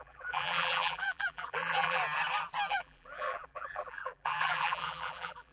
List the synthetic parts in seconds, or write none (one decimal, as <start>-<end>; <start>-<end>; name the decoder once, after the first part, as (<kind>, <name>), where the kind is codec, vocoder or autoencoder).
0.0-2.0 (vocoder, BigVGAN v2); 2.7-5.5